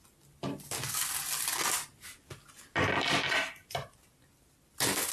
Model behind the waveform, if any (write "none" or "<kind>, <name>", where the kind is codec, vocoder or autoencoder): none